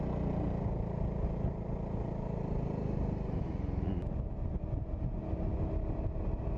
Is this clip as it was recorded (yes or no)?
yes